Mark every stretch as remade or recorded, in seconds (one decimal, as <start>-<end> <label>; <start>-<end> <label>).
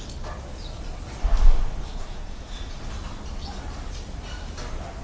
0.0-1.9 recorded; 1.9-2.8 remade; 2.8-5.0 recorded